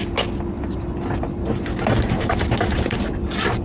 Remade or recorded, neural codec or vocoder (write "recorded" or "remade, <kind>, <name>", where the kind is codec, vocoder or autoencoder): recorded